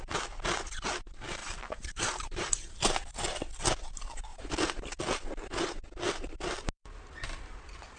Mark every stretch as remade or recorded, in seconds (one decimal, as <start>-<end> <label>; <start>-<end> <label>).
0.0-1.4 recorded; 1.4-2.5 remade; 2.5-4.3 recorded; 4.3-5.0 remade; 5.0-8.0 recorded